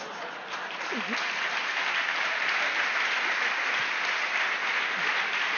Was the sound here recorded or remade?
recorded